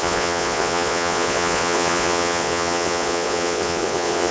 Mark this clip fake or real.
fake